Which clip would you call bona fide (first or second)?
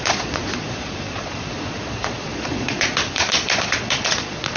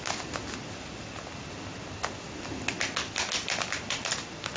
second